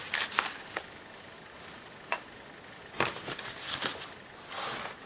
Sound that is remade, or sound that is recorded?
recorded